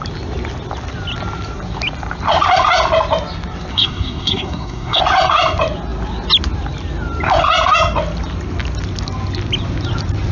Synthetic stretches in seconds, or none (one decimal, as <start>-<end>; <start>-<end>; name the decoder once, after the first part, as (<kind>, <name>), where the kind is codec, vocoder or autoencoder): 3.7-5.0 (codec, SNAC)